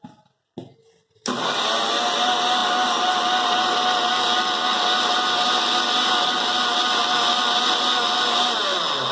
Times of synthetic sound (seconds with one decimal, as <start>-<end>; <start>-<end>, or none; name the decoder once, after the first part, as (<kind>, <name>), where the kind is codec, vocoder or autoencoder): none